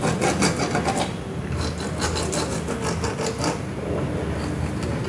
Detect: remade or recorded recorded